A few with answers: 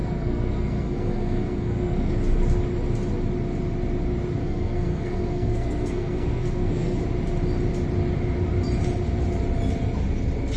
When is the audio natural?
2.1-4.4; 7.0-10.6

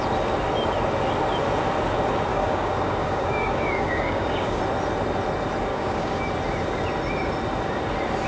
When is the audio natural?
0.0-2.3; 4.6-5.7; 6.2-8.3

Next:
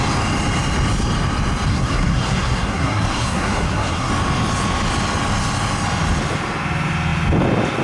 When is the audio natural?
0.0-1.7; 4.1-7.8